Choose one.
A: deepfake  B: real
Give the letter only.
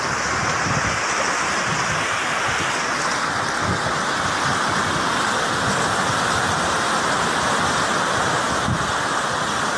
B